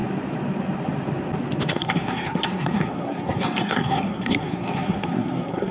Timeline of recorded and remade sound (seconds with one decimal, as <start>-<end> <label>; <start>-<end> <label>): 0.0-1.7 recorded; 1.7-5.7 remade